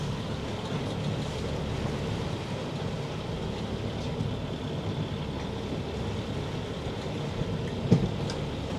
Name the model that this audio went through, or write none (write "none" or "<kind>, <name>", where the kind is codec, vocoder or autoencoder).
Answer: none